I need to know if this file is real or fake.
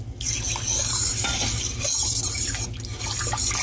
real